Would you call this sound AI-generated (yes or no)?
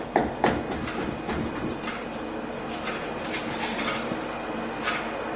no